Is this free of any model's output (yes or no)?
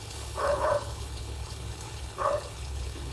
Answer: no